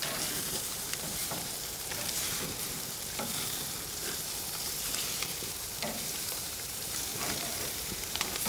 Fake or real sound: fake